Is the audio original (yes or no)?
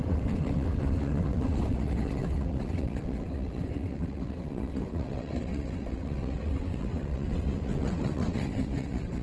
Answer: no